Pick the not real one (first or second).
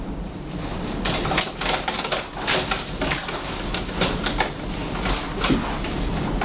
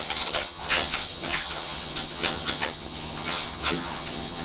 second